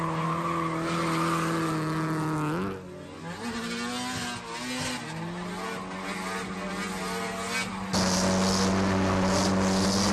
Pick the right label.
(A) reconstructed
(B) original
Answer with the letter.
B